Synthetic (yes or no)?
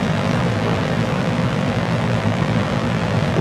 yes